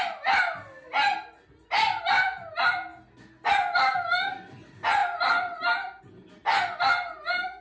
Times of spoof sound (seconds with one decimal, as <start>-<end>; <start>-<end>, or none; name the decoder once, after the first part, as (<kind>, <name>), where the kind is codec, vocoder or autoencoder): none